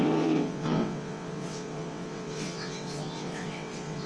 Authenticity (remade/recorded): remade